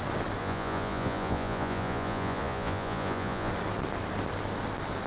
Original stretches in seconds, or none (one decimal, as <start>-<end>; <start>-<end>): 0.0-0.4; 3.5-5.1